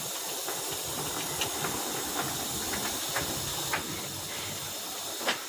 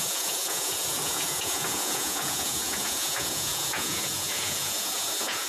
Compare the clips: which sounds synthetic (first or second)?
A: second